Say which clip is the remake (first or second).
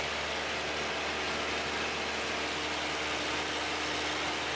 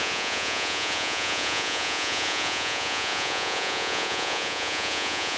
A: second